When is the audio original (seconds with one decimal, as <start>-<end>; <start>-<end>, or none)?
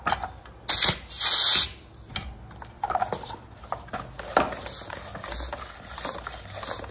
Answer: 0.0-6.9